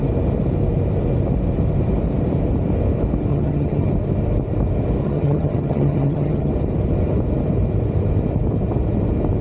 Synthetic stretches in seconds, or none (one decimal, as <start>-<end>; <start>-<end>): 3.3-3.9; 5.0-6.5